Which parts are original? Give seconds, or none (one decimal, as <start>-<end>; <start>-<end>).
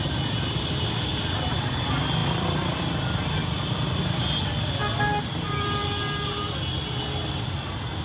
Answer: 0.0-2.2; 2.9-8.0